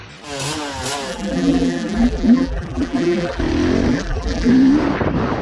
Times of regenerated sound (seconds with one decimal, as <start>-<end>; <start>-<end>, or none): 1.1-3.4; 3.9-4.5